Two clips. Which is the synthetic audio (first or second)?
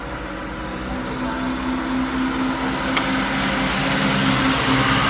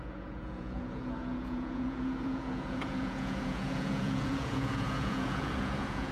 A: second